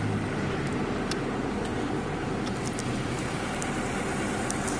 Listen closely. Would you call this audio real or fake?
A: real